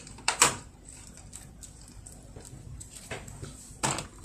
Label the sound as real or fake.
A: fake